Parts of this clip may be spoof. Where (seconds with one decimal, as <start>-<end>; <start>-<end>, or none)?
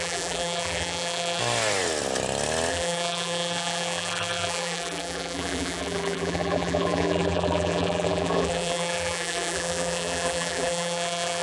0.0-1.4; 2.7-11.4